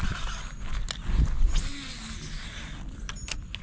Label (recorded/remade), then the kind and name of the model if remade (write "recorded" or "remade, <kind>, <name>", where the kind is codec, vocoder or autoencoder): recorded